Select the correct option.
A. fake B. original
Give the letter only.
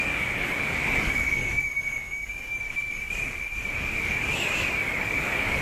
A